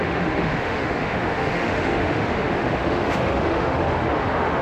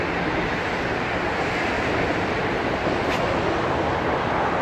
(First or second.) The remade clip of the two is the first